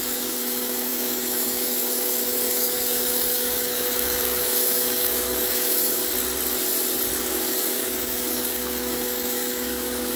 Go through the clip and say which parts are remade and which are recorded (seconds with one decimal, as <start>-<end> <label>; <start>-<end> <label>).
0.0-6.0 remade; 6.0-7.2 recorded; 7.2-10.2 remade